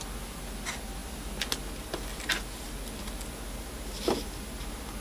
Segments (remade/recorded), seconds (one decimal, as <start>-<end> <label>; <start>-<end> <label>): 0.0-5.0 recorded